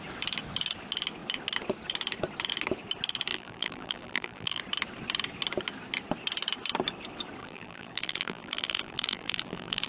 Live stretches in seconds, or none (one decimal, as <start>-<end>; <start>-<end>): 0.0-3.3; 4.6-7.4